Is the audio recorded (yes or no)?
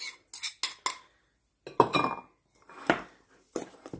yes